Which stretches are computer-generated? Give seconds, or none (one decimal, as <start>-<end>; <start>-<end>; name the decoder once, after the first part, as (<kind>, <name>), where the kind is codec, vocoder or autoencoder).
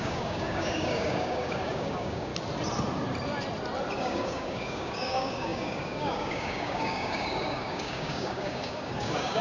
0.0-2.3 (codec, DAC); 4.0-9.4